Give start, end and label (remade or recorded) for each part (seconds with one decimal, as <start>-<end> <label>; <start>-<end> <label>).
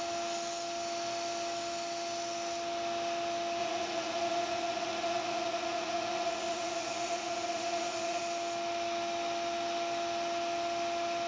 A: 0.0-3.6 recorded; 3.6-8.2 remade; 8.2-11.3 recorded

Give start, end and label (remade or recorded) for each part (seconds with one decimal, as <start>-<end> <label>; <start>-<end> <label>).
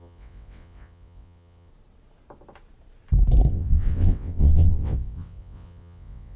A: 0.0-1.7 remade; 1.7-3.5 recorded; 3.5-6.4 remade